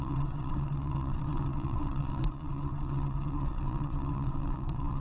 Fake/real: fake